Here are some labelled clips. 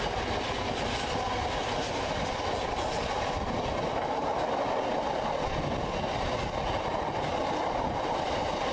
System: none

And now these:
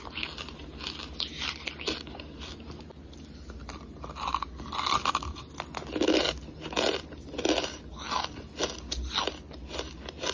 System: none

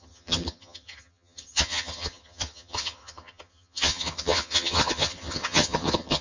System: vocoder, HiFi-GAN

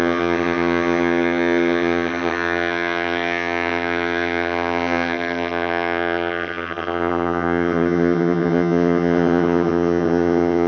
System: vocoder, HiFi-GAN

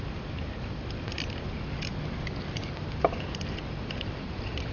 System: none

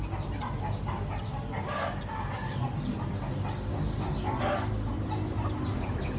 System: none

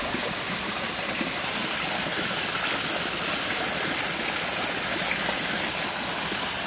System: none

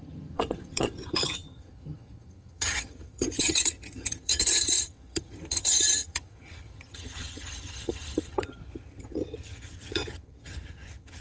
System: vocoder, HiFi-GAN